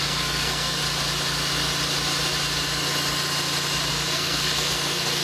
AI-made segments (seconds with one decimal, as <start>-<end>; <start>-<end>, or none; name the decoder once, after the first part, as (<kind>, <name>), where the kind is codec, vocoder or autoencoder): 0.0-0.8 (codec, SNAC); 3.9-5.2